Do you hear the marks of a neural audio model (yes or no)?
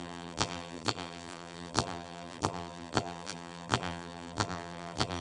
yes